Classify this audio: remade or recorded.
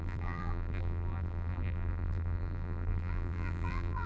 remade